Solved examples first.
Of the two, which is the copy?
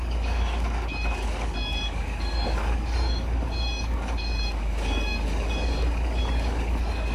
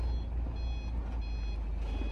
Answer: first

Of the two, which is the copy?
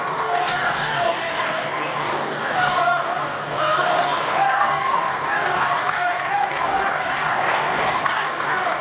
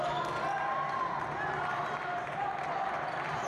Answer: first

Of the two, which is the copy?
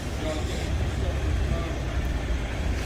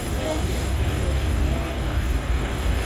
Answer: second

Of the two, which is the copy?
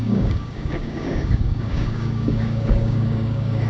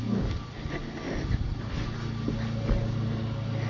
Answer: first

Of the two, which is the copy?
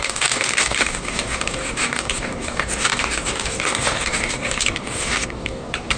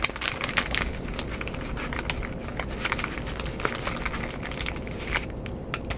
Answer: first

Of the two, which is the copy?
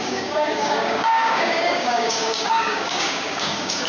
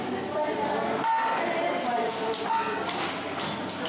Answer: first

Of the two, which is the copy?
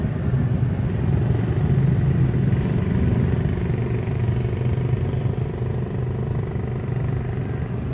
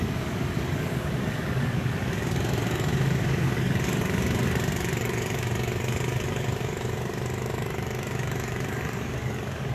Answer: second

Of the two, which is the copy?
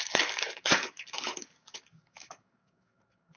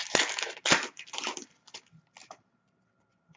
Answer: first